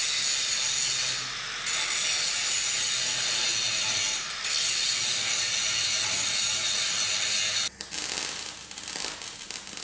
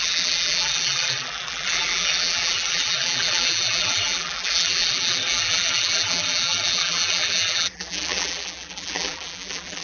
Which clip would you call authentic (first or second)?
first